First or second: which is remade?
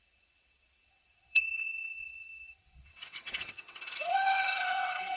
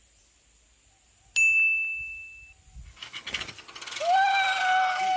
first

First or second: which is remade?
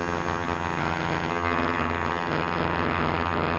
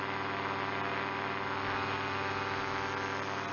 first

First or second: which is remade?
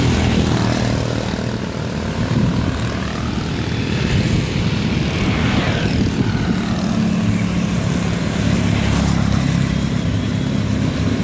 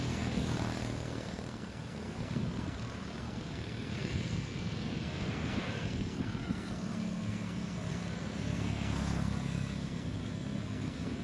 second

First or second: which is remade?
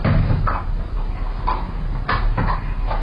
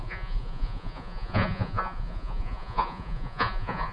second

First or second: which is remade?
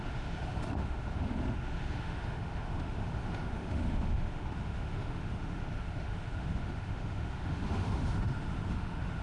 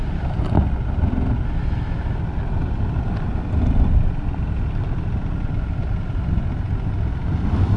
first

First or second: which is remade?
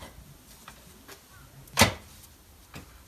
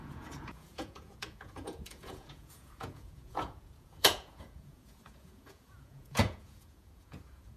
second